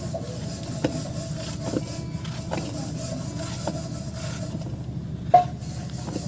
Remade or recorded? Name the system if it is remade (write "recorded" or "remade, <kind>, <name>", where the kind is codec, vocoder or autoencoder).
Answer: recorded